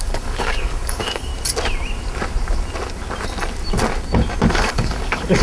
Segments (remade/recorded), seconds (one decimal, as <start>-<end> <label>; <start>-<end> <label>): 0.0-1.3 remade; 1.3-4.5 recorded; 4.5-5.4 remade